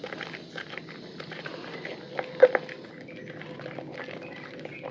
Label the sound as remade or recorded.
recorded